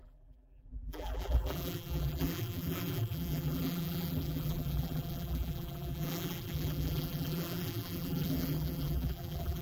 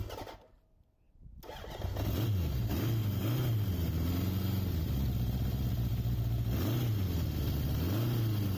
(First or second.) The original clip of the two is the second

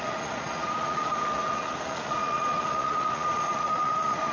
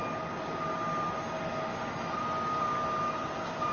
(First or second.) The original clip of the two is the second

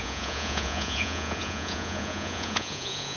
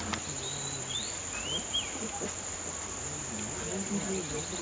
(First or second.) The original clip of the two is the second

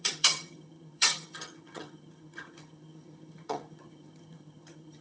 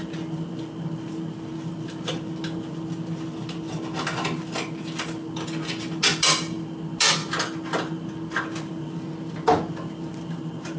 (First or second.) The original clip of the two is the second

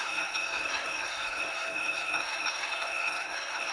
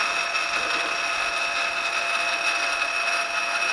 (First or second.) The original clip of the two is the second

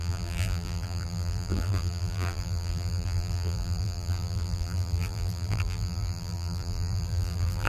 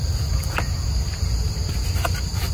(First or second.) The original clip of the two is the second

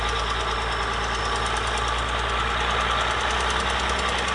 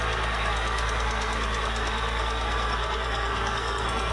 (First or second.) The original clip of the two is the first